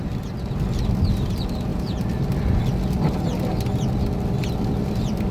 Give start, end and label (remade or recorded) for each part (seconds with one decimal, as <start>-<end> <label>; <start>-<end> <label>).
0.0-5.3 recorded